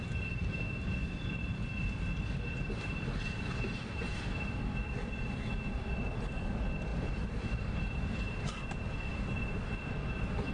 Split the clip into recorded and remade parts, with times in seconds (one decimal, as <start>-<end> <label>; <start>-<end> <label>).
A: 0.0-10.5 remade